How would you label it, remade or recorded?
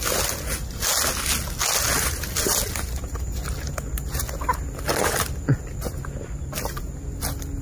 recorded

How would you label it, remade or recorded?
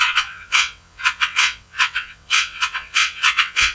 remade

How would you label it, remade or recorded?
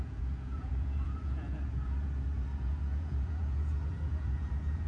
remade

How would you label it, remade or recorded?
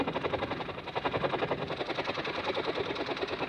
recorded